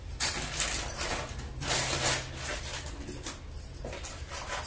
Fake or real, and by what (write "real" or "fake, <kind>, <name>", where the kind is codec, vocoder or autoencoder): real